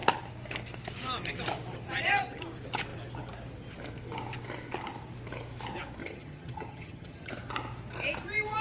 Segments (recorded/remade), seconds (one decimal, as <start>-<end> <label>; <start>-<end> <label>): 0.0-6.0 recorded; 6.0-7.3 remade; 7.3-8.6 recorded